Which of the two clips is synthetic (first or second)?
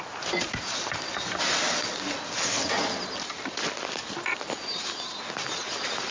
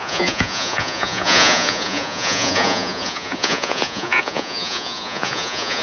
second